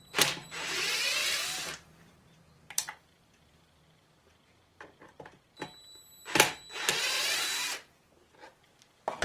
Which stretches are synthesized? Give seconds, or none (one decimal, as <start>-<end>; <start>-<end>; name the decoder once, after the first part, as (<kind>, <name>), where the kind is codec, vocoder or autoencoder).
1.2-3.8 (vocoder, BigVGAN v2)